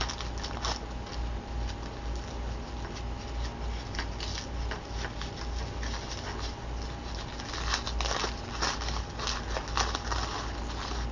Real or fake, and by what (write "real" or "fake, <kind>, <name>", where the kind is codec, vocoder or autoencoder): real